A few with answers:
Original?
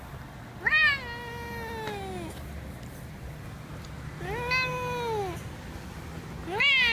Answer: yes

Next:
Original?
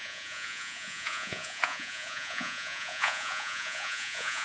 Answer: no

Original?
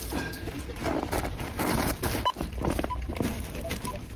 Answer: yes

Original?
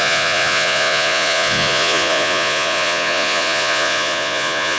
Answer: no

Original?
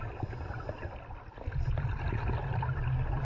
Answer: yes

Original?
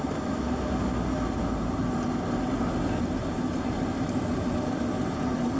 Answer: yes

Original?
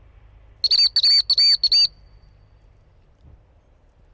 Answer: yes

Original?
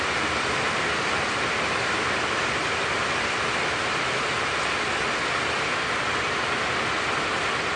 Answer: yes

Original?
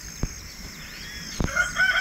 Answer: yes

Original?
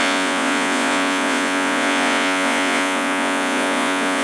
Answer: no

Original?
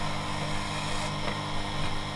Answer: yes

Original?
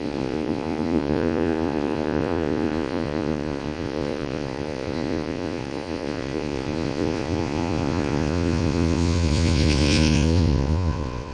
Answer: no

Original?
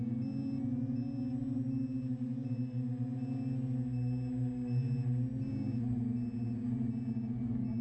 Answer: yes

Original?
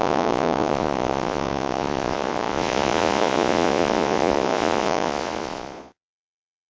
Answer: no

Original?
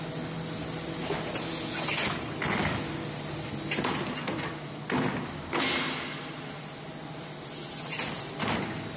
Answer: yes